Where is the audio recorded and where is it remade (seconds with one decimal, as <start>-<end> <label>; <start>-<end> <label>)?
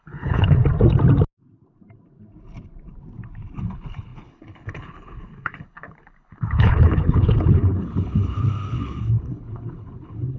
0.0-0.6 remade; 0.6-3.6 recorded; 3.6-10.4 remade